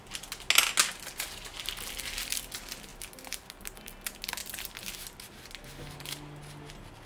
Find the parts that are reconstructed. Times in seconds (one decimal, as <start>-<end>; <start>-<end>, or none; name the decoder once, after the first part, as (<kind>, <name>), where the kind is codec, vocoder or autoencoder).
none